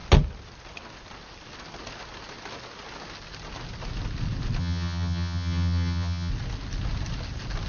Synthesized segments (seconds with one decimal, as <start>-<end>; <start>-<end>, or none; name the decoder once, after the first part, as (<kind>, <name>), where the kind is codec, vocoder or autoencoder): 4.6-6.3 (vocoder, HiFi-GAN)